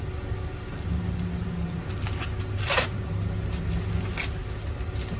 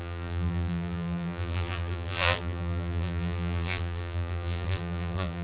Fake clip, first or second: second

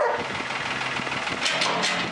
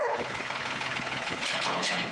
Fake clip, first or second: second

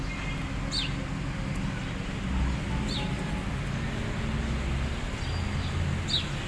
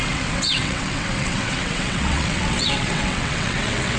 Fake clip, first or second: second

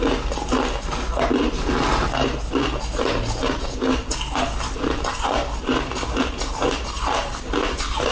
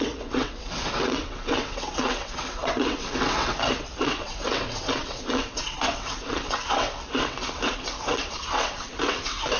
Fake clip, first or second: second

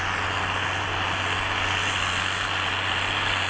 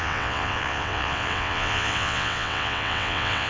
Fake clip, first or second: second